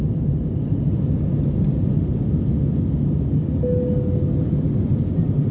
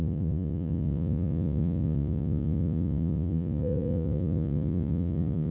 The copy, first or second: second